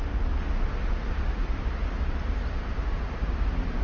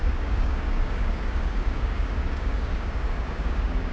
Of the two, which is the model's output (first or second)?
second